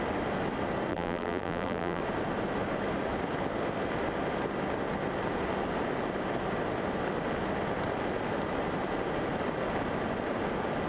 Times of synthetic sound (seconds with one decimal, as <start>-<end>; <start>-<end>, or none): 0.9-2.0

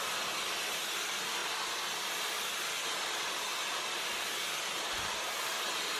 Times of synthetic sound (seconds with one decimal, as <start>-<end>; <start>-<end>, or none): none